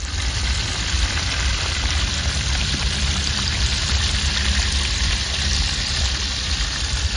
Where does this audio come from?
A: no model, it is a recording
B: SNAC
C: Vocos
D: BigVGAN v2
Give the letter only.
D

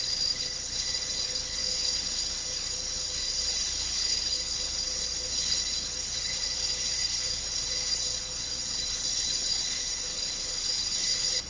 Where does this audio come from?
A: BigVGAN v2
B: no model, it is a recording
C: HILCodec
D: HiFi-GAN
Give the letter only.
C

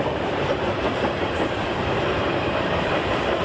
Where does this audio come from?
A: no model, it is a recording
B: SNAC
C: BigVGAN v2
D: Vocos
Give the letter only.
C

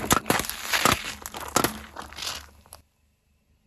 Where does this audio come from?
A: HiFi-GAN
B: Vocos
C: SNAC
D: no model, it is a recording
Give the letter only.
D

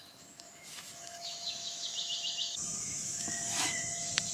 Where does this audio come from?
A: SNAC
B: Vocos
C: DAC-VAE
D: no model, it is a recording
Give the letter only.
C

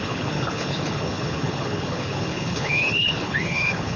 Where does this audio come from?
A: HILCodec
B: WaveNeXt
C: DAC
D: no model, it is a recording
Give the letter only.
A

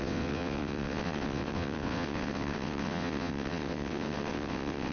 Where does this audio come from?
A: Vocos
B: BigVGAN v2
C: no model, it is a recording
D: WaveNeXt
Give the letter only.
D